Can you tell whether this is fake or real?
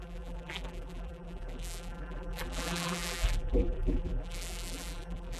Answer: fake